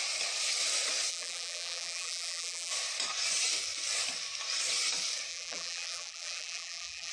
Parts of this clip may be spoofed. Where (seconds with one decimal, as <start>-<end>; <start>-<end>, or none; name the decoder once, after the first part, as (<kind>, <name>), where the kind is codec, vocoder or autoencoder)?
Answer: 1.1-2.7 (vocoder, BigVGAN v2); 5.3-7.1